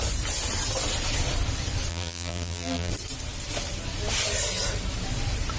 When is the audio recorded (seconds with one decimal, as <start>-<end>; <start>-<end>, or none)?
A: 0.0-1.9; 2.9-5.6